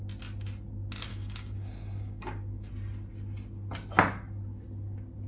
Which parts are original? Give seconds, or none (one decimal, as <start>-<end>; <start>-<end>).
0.0-1.1; 2.7-5.3